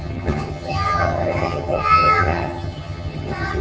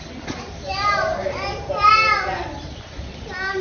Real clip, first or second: second